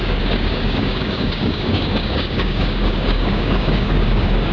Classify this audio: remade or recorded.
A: remade